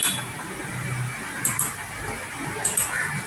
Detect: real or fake fake